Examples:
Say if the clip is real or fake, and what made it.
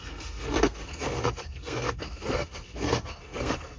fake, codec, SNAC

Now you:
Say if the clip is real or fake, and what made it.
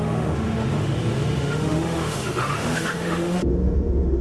fake, autoencoder, DAC-VAE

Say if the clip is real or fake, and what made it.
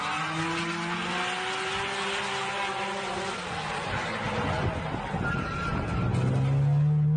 real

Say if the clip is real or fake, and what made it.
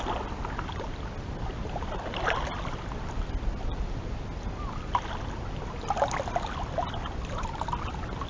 real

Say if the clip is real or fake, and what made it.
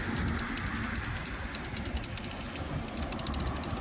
real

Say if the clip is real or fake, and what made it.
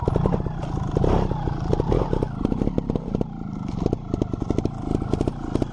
real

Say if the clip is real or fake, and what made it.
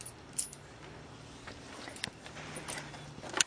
real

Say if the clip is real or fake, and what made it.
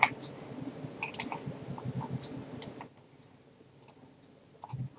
real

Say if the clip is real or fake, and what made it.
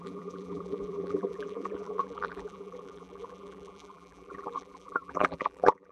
fake, vocoder, BigVGAN v2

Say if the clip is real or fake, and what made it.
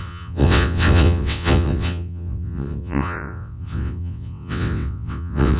fake, vocoder, WaveNeXt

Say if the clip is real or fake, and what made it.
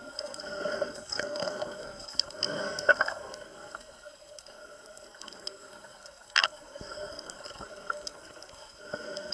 fake, codec, SNAC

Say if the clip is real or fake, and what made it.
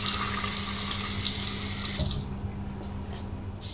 real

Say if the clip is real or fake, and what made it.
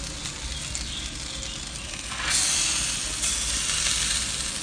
real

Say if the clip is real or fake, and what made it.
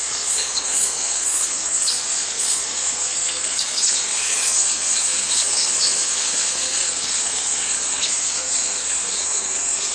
fake, codec, SNAC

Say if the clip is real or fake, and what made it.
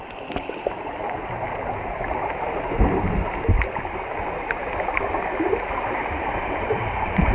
real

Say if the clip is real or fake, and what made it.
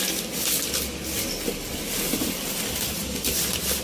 real